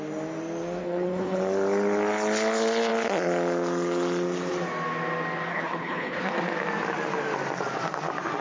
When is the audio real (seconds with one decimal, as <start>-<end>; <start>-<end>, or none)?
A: 0.0-0.8; 1.4-5.5; 6.2-8.4